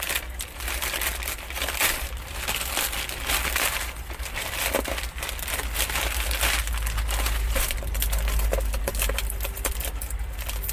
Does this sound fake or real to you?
real